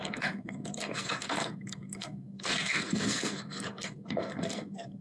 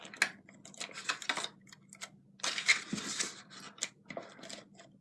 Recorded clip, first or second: second